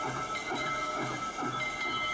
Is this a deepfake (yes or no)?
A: no